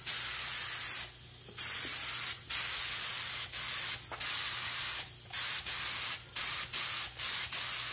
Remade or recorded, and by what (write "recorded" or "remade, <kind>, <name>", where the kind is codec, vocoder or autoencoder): recorded